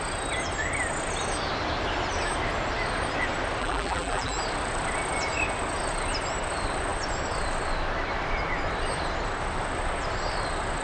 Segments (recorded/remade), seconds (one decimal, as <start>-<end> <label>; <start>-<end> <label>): 0.0-3.6 recorded; 3.6-4.4 remade; 4.4-10.8 recorded